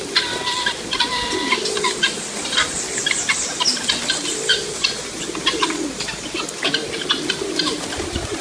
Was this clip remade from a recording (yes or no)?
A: no